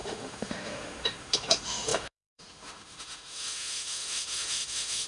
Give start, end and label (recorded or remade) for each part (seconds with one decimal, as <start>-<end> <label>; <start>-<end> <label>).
0.0-5.1 remade